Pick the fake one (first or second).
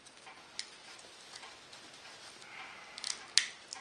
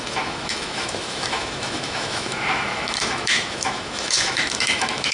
second